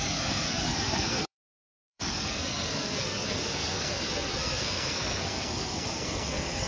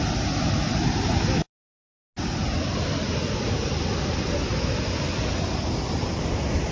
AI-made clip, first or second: first